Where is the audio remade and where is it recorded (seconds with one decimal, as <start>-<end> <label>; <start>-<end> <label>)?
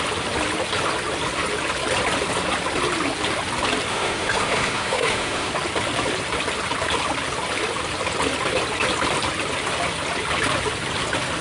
0.0-3.9 recorded; 3.9-5.5 remade; 5.5-11.4 recorded